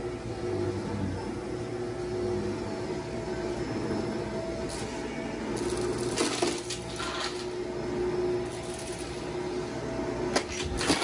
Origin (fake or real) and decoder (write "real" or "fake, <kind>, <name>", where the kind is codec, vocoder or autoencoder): real